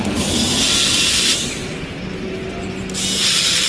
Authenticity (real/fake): real